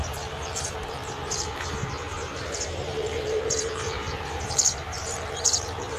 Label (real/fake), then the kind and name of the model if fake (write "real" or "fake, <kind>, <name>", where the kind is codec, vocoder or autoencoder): fake, vocoder, BigVGAN v2